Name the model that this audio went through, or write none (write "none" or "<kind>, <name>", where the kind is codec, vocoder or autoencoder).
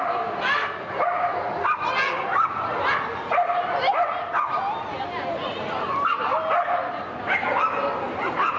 none